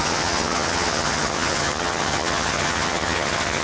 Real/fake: fake